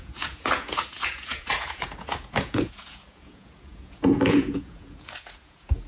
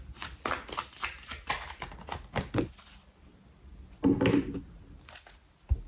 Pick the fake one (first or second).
first